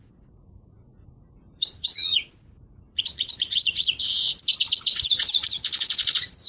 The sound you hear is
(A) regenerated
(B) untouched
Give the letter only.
A